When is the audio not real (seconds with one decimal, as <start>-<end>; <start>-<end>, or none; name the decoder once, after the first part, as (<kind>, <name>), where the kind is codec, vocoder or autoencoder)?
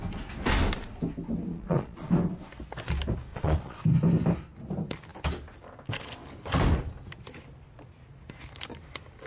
1.5-2.1 (vocoder, Vocos); 3.3-3.8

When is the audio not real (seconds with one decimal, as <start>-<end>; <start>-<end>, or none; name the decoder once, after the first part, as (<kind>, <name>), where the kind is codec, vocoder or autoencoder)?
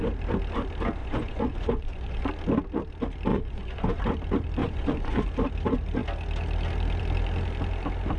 1.0-2.3 (vocoder, Vocos); 3.3-4.0; 4.6-5.2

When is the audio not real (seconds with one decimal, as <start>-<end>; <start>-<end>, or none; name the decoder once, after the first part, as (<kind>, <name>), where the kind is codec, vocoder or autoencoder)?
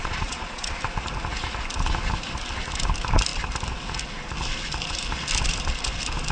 0.0-0.8 (vocoder, Vocos)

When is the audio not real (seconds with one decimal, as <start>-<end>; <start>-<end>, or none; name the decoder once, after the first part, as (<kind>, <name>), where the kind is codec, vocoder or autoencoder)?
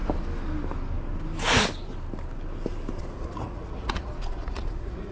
3.0-5.1 (vocoder, Vocos)